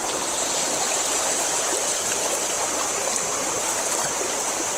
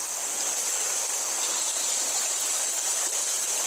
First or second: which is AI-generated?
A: first